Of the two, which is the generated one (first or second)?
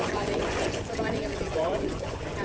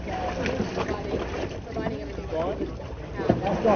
first